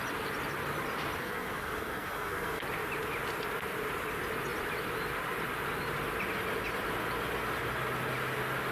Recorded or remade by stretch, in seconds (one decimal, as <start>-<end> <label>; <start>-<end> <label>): 0.0-1.2 recorded; 1.2-2.6 remade; 2.6-8.7 recorded